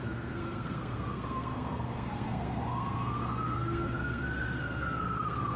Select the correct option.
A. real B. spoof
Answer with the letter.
B